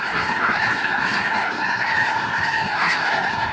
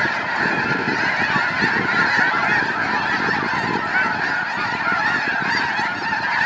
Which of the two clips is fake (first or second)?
first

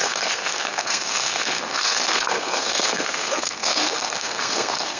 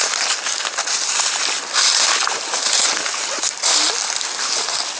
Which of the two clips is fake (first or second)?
first